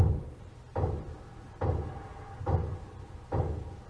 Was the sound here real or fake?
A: real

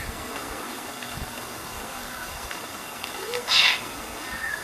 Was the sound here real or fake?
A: fake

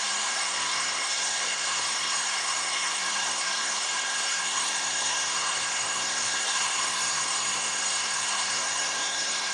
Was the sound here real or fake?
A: fake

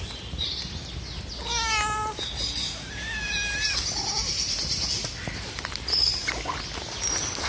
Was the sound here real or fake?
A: real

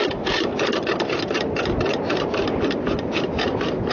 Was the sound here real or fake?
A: real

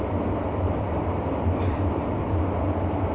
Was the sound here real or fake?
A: fake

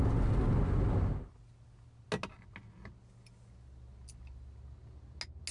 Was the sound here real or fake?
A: real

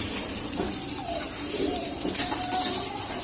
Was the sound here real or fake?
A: fake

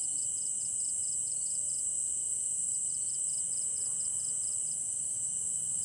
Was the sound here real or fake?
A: real